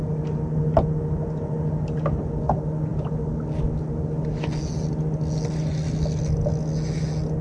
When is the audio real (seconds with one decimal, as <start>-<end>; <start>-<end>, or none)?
0.0-7.4